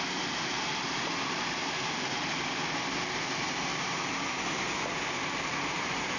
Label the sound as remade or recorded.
recorded